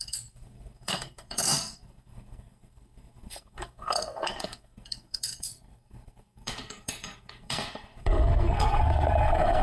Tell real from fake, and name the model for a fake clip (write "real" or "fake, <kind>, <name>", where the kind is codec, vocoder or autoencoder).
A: fake, codec, SNAC